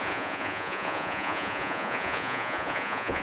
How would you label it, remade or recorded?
remade